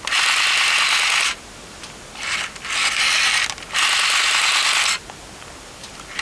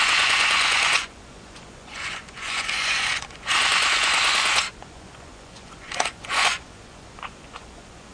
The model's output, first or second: second